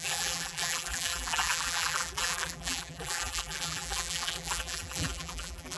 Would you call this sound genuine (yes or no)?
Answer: no